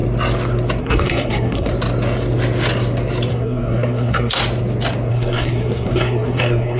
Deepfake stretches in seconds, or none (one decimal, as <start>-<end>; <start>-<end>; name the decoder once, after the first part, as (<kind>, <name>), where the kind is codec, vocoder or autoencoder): 0.8-1.7 (codec, SNAC); 3.3-4.4; 5.1-6.8